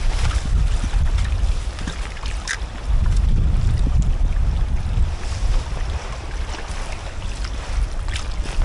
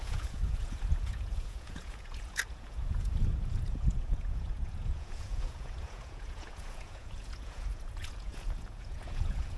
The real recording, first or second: first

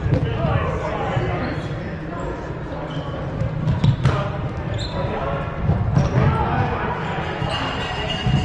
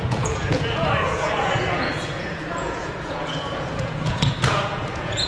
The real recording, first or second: first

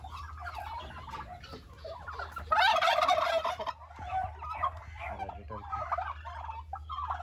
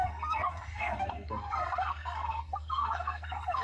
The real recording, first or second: first